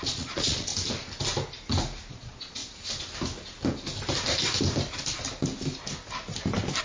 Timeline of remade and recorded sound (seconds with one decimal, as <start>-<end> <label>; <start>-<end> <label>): 0.0-0.7 remade; 0.7-2.1 recorded; 2.1-2.6 remade; 2.6-6.8 recorded